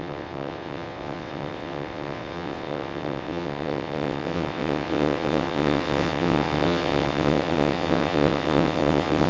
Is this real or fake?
fake